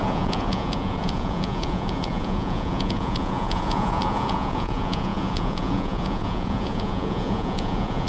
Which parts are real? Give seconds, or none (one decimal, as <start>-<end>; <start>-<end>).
none